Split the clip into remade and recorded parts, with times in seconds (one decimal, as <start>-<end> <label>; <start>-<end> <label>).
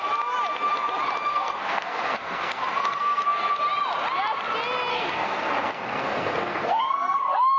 0.0-1.3 recorded; 1.3-3.6 remade; 3.6-4.9 recorded; 4.9-7.6 remade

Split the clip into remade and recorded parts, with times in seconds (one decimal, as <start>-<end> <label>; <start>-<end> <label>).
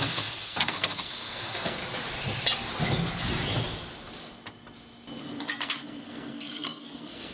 0.0-1.8 remade; 1.8-5.2 recorded; 5.2-7.3 remade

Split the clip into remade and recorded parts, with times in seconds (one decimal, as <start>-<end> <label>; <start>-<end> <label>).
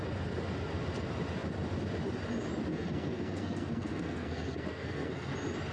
0.0-2.7 recorded; 2.7-5.3 remade; 5.3-5.7 recorded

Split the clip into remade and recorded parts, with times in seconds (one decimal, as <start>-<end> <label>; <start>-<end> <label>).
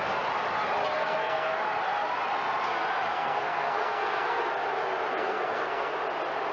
0.0-1.0 recorded; 1.0-1.5 remade; 1.5-3.1 recorded; 3.1-4.4 remade; 4.4-5.1 recorded; 5.1-5.9 remade; 5.9-6.5 recorded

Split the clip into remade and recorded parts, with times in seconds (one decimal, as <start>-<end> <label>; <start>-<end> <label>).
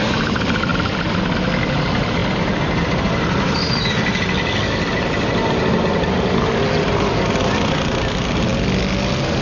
0.0-9.4 recorded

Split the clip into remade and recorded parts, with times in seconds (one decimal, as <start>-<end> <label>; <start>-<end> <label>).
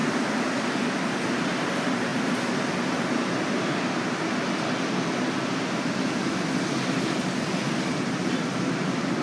0.0-9.2 recorded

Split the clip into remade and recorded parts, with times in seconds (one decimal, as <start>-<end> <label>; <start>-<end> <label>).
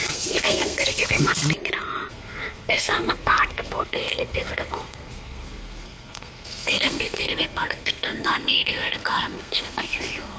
0.0-1.4 remade; 1.4-2.1 recorded; 2.1-10.4 remade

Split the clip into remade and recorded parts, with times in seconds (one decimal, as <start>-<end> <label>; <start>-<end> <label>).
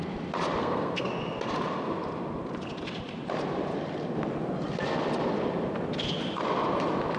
0.0-0.6 recorded; 0.6-1.1 remade; 1.1-7.2 recorded